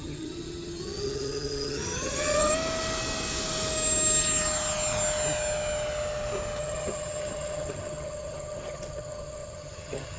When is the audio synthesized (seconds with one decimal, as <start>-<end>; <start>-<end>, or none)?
0.0-2.5; 6.6-10.2